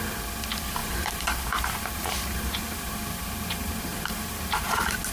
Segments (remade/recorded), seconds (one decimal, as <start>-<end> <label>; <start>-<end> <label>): 0.0-0.8 recorded; 0.8-3.3 remade; 3.3-3.9 recorded; 3.9-5.1 remade